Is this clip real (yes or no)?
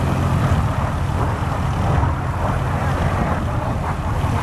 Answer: yes